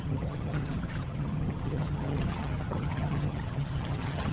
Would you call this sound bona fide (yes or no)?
no